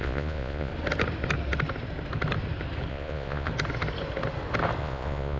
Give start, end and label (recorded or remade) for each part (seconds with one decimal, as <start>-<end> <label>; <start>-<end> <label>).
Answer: 0.0-0.7 remade; 0.7-2.9 recorded; 2.9-3.5 remade; 3.5-4.8 recorded; 4.8-5.4 remade